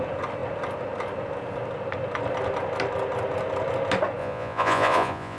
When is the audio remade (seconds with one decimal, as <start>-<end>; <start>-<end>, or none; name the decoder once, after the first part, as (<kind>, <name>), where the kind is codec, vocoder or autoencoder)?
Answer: 4.2-5.4 (vocoder, Vocos)